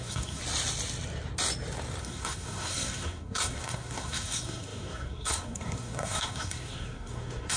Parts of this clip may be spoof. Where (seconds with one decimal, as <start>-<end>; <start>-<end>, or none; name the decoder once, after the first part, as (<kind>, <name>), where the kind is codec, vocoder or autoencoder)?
0.0-0.4 (codec, SNAC); 2.0-7.6